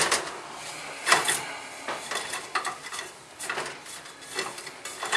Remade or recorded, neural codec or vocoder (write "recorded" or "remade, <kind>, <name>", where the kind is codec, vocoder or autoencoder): recorded